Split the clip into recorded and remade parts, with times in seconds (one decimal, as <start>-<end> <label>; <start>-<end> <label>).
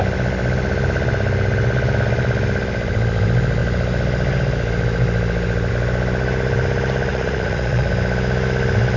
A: 0.0-7.1 recorded; 7.1-7.9 remade; 7.9-9.0 recorded